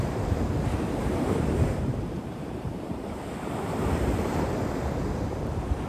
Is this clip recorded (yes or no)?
no